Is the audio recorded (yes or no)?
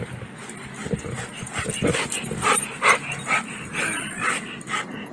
yes